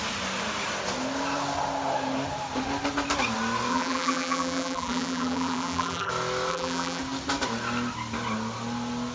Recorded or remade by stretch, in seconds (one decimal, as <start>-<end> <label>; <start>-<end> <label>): 0.0-3.7 recorded; 3.7-6.1 remade; 6.1-6.5 recorded; 6.5-7.0 remade; 7.0-9.1 recorded